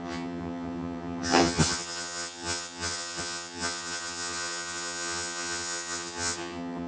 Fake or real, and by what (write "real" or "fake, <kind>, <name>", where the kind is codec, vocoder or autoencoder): fake, vocoder, HiFi-GAN